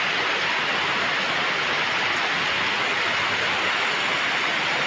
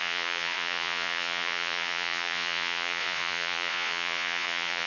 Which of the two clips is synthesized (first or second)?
second